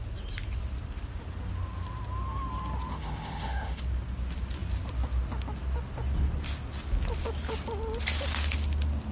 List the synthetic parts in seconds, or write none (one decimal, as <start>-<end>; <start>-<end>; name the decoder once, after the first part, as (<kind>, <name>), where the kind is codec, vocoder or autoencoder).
2.9-3.8 (autoencoder, DAC-VAE)